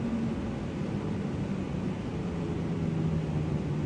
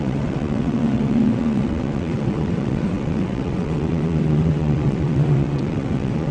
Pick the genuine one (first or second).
first